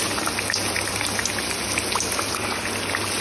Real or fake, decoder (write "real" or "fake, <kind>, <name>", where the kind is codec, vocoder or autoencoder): real